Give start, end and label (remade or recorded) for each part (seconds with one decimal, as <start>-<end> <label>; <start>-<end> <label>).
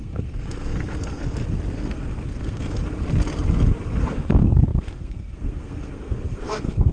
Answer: 0.0-1.2 remade; 1.2-1.7 recorded; 1.7-2.8 remade; 2.8-4.0 recorded; 4.0-6.9 remade